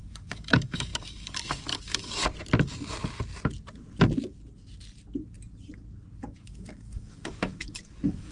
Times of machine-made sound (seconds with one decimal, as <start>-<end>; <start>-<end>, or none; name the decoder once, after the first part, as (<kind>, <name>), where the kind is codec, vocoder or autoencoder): 0.0-2.2 (codec, DAC); 6.2-8.3